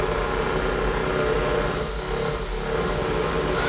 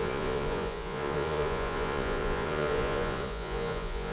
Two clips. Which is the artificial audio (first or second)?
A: second